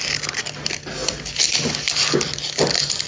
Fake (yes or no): no